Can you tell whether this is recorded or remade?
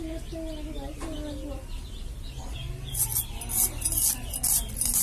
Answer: recorded